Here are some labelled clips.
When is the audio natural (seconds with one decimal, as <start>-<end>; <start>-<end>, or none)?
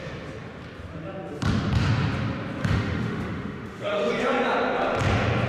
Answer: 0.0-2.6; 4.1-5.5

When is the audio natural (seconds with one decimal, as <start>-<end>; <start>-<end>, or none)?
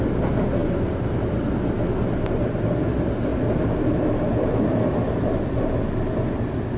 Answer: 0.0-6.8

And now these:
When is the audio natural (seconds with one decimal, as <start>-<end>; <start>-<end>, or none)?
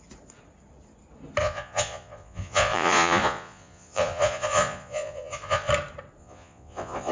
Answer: 0.0-1.4; 5.7-6.2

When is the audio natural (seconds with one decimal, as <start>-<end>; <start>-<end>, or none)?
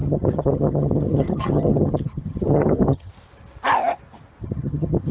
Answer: 3.1-4.4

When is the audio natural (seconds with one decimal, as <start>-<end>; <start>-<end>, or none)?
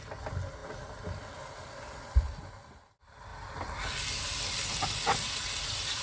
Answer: 0.0-6.0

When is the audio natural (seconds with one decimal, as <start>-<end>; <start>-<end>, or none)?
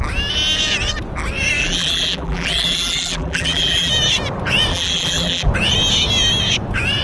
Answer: 0.0-1.6; 3.9-4.7; 5.5-7.0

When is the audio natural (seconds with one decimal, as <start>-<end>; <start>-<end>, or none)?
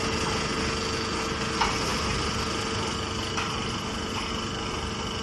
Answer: 0.0-5.2